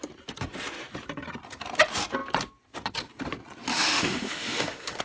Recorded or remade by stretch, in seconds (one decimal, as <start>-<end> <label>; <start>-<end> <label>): 0.0-3.7 recorded; 3.7-5.0 remade